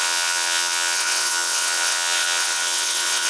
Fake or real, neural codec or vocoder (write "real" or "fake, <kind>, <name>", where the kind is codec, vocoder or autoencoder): fake, vocoder, WaveNeXt